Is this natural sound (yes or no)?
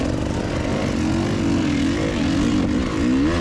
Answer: yes